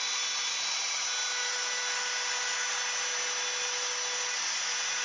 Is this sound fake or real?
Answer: real